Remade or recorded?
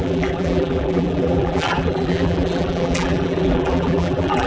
remade